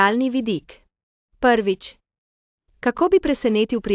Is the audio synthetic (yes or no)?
no